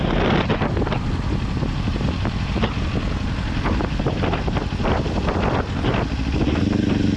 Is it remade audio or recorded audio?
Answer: recorded